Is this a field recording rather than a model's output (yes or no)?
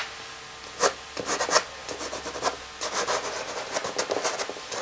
yes